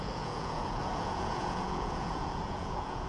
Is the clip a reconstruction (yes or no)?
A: yes